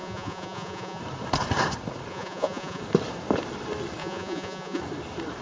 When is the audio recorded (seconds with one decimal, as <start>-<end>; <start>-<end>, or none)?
1.0-2.1; 2.8-4.0; 4.8-5.4

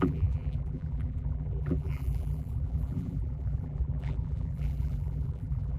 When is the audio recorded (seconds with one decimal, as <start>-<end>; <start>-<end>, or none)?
none

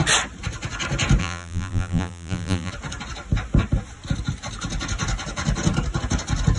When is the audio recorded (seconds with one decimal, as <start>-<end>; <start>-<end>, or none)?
0.0-1.2; 2.7-6.6

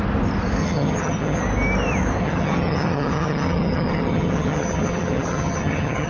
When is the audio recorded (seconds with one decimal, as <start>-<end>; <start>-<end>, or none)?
0.0-0.6; 1.4-2.2

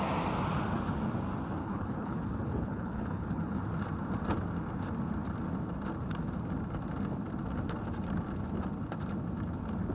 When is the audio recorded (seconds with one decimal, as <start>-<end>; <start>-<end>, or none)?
0.0-1.6; 3.6-9.9

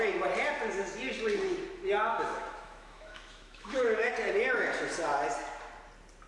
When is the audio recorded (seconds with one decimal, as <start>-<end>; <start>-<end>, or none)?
0.0-2.1; 4.1-6.3